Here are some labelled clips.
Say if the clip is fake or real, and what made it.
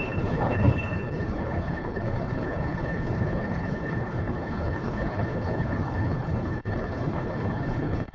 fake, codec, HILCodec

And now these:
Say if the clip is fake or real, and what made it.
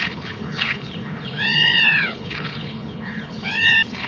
fake, codec, HILCodec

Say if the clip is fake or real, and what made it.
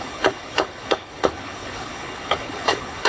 fake, codec, HILCodec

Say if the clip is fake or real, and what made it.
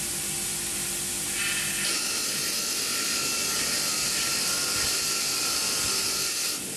real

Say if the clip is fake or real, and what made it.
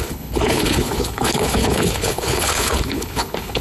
fake, codec, HILCodec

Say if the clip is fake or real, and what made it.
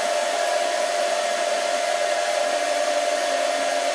real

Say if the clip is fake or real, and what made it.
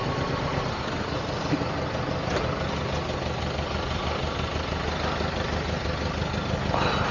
real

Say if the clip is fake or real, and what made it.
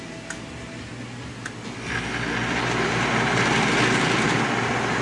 real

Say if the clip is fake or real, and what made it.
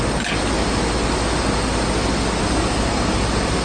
real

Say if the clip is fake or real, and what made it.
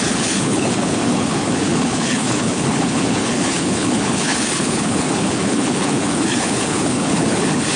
fake, codec, HILCodec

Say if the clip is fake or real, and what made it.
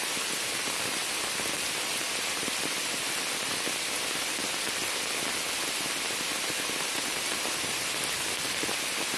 real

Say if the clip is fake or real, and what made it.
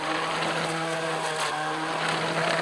real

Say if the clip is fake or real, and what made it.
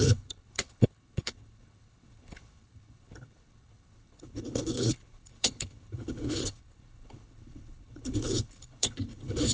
fake, codec, HILCodec